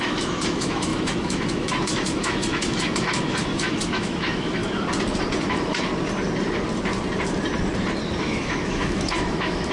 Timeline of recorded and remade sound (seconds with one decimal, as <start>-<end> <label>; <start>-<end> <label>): 0.0-4.6 remade; 4.6-5.4 recorded; 5.4-5.9 remade; 5.9-8.2 recorded; 8.2-9.7 remade